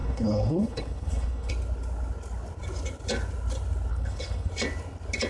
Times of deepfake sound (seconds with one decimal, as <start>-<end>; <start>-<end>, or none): 0.0-1.5; 3.9-4.5